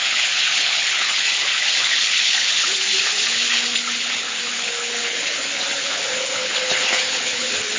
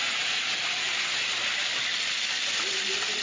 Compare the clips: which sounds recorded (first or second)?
second